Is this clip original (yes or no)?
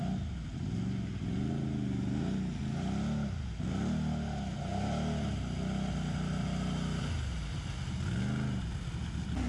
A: yes